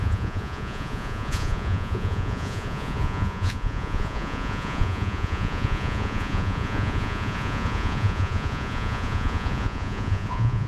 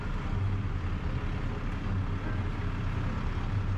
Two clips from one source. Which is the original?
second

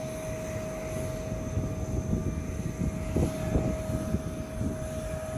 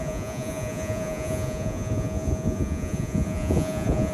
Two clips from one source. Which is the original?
first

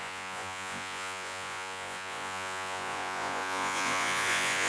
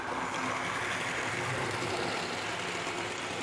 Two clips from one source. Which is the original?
second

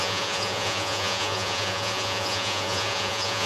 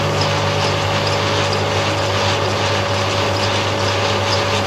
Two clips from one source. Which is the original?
second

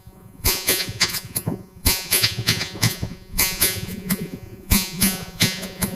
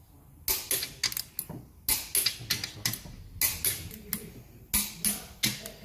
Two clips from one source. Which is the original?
second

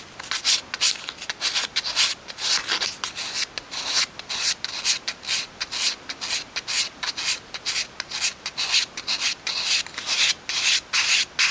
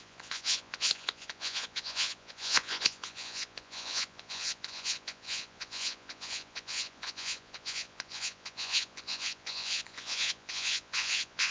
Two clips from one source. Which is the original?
first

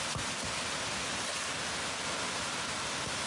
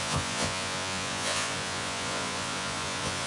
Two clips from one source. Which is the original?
first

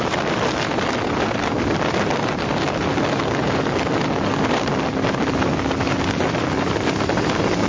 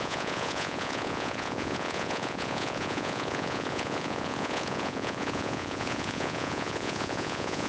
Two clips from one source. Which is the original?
first